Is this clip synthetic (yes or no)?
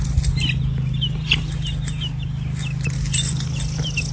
no